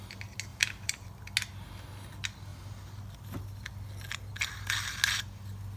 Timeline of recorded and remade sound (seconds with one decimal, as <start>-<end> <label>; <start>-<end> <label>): 0.0-0.5 recorded; 0.5-1.2 remade; 1.2-5.8 recorded